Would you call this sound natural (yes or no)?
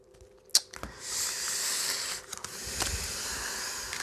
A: yes